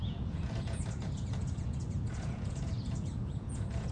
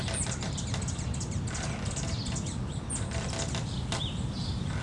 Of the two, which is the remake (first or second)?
first